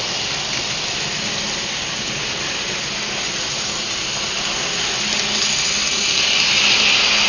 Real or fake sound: real